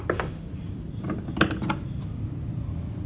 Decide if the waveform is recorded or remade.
recorded